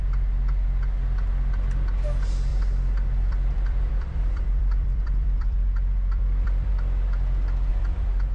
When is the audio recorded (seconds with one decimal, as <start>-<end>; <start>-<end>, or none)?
0.0-2.5; 6.7-7.7